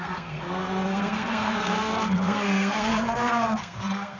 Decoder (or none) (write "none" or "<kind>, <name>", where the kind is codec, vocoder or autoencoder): codec, SNAC